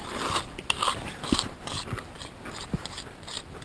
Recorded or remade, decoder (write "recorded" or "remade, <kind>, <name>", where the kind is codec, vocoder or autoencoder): recorded